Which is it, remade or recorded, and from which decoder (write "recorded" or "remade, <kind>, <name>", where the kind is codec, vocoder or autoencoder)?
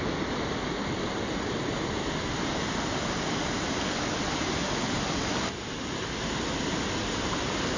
recorded